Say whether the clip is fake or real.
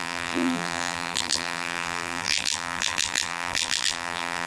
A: fake